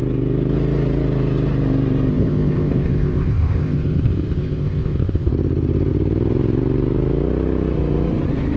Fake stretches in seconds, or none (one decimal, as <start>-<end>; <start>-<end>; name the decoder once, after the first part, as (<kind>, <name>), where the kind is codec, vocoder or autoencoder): 2.1-5.3 (codec, ZipCodec)